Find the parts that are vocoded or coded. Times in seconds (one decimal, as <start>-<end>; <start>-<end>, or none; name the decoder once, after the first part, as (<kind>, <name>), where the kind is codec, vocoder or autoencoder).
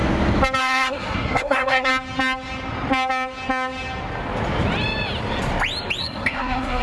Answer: 0.6-1.9 (codec, SNAC); 6.0-6.8